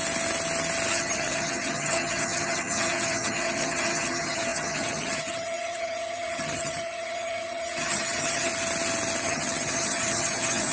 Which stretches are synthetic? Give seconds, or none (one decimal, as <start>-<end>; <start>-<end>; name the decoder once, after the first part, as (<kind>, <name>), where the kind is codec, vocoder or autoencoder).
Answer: 0.9-8.5 (vocoder, HiFi-GAN); 9.2-10.7